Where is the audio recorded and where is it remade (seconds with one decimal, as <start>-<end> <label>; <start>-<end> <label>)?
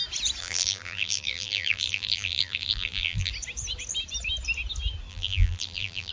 0.0-0.4 recorded; 0.4-3.3 remade; 3.3-5.1 recorded; 5.1-6.1 remade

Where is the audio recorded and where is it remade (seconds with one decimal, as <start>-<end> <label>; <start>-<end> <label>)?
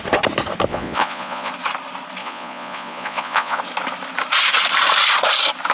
0.0-0.7 recorded; 0.7-1.5 remade; 1.5-2.2 recorded; 2.2-3.6 remade; 3.6-5.7 recorded